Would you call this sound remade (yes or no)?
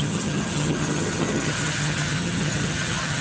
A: yes